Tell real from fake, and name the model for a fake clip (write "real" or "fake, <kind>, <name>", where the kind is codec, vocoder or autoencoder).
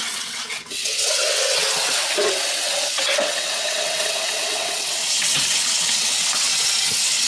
fake, vocoder, WaveNeXt